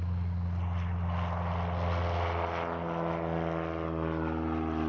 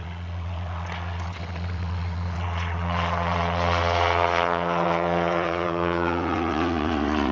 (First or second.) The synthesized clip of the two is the second